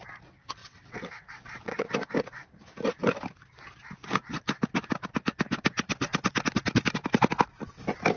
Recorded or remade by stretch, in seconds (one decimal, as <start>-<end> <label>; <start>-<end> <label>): 0.0-0.6 recorded; 0.6-1.9 remade; 1.9-8.2 recorded